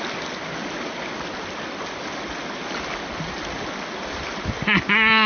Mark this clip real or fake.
real